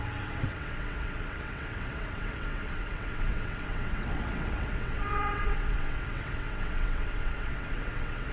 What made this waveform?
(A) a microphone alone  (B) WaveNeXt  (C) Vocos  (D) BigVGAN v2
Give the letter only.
B